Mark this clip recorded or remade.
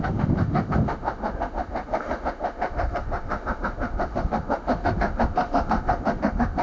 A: remade